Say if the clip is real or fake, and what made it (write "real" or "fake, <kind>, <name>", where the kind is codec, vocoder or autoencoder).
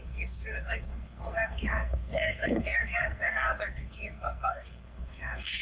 fake, codec, SNAC